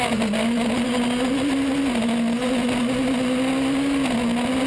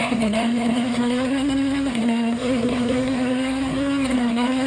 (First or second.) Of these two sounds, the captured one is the first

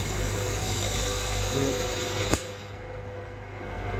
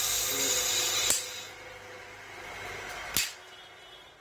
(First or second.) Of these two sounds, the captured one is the second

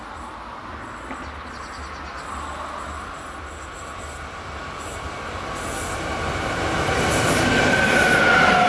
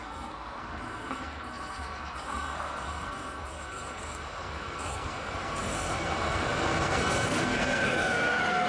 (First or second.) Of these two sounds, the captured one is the first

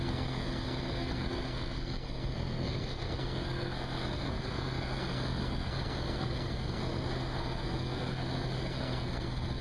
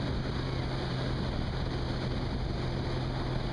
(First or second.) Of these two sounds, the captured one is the second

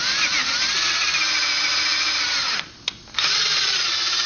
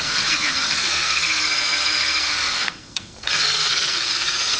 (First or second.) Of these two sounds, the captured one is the first